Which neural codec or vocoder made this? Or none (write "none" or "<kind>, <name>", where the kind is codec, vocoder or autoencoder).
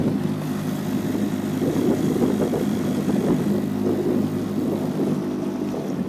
none